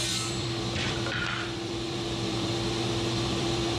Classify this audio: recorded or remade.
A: remade